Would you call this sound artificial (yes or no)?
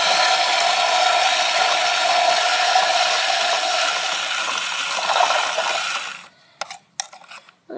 no